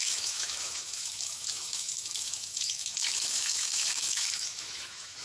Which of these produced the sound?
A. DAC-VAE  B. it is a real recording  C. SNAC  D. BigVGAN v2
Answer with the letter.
A